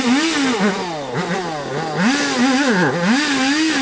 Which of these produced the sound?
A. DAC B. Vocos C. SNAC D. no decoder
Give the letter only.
D